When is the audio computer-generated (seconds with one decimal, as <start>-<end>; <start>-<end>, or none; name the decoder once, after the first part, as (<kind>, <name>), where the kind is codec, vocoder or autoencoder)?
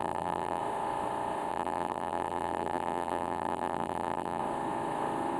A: 0.0-0.6 (vocoder, BigVGAN v2); 1.5-4.4